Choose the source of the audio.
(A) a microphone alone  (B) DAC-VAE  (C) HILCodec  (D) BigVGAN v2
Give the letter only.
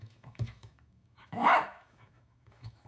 B